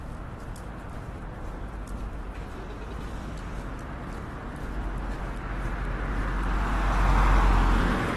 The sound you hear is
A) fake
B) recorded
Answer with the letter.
B